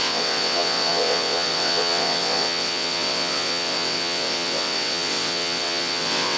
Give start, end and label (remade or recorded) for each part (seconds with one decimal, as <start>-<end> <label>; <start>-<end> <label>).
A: 0.0-6.4 remade